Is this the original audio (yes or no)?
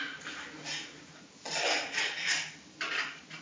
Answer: yes